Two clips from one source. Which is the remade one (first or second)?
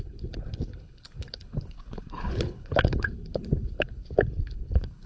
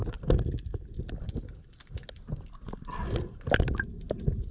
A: first